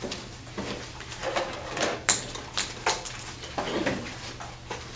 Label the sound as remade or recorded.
recorded